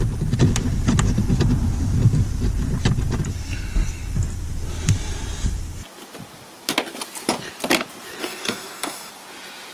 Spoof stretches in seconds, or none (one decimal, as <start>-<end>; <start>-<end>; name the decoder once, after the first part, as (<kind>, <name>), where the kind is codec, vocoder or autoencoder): 8.2-9.1 (codec, DAC)